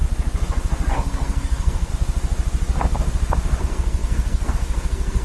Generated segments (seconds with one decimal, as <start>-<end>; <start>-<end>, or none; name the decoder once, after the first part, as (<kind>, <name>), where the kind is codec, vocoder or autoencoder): 0.9-1.9 (codec, SNAC); 3.6-5.2